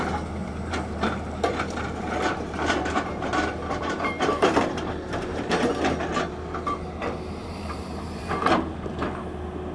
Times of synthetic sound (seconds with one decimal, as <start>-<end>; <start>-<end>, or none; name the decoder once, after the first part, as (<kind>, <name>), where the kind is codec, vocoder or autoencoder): 0.4-5.5 (vocoder, BigVGAN v2); 7.4-8.3